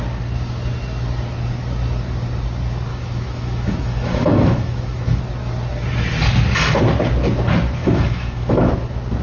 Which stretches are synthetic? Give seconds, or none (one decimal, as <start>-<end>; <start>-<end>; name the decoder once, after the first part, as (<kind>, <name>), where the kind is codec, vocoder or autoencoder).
2.9-5.2 (autoencoder, DAC-VAE); 7.8-8.7